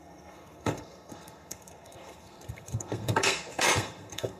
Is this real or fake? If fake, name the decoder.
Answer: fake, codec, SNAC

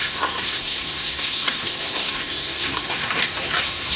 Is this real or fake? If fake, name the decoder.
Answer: fake, codec, SNAC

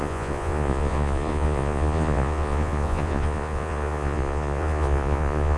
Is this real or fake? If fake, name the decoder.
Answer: fake, vocoder, Vocos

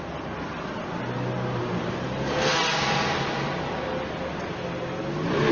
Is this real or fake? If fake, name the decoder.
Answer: real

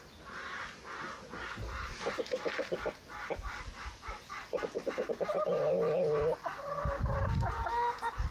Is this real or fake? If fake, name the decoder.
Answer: real